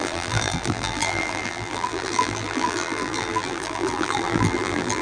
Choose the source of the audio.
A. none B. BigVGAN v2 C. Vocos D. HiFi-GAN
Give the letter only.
B